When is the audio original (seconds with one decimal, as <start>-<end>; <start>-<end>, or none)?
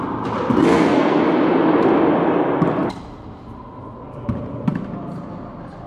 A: 0.0-0.7; 1.2-5.9